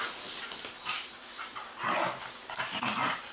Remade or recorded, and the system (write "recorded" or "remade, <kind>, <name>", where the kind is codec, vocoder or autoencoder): recorded